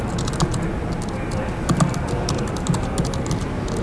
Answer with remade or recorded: recorded